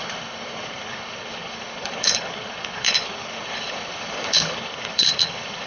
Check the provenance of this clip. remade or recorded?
remade